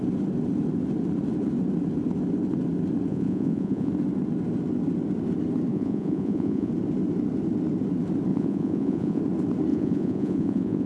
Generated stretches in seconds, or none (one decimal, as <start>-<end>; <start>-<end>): 3.1-3.9; 5.7-6.7; 8.3-9.2; 9.7-10.9